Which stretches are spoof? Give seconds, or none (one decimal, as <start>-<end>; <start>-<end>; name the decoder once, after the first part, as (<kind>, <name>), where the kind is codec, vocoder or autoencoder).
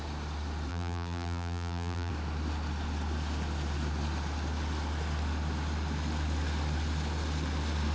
0.7-2.1 (vocoder, BigVGAN v2)